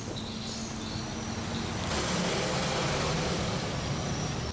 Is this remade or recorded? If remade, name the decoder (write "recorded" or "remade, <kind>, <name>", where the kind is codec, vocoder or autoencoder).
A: recorded